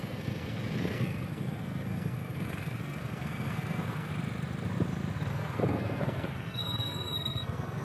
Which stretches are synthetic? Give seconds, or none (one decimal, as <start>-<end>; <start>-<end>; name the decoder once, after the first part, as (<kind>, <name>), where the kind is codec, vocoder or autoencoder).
0.0-4.1 (codec, SNAC); 5.3-7.8